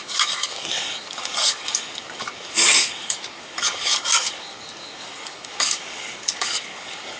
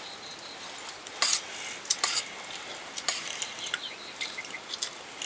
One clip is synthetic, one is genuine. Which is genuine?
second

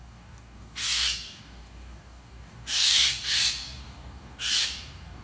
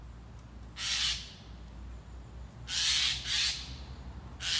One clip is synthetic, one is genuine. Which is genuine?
second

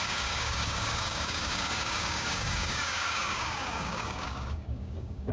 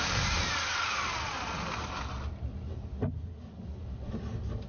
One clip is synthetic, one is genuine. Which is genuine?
second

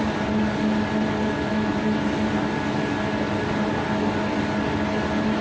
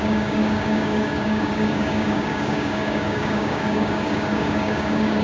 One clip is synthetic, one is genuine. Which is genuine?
first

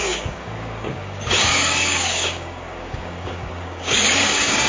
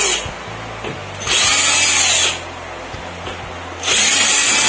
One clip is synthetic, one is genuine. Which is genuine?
second